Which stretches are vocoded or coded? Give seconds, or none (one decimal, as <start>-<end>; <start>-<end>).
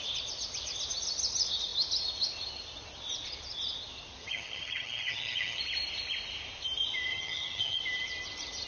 4.2-5.6; 7.1-7.8